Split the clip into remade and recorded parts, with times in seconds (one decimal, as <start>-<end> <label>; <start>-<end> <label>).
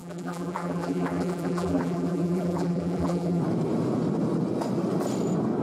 0.0-3.4 remade; 3.4-5.6 recorded